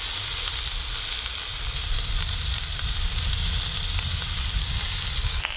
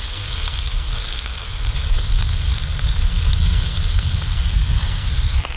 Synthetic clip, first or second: second